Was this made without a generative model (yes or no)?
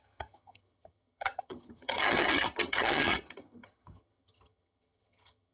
no